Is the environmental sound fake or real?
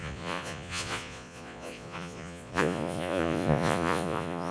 fake